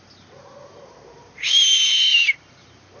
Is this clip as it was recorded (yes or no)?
yes